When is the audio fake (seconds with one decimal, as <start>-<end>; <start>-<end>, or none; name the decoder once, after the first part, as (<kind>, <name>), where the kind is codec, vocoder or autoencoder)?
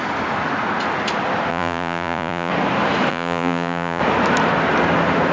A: 1.5-2.5 (vocoder, Vocos); 3.1-4.0